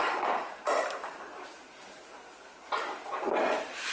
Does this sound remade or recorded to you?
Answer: remade